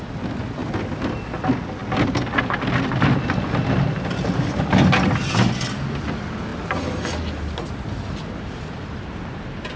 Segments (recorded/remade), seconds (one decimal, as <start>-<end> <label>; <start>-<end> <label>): 0.0-9.8 recorded